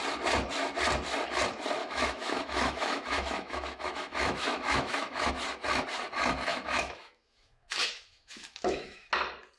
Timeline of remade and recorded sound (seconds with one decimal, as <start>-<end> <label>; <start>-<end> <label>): 0.0-1.8 recorded; 1.8-5.3 remade; 5.3-6.5 recorded; 6.5-9.1 remade; 9.1-9.6 recorded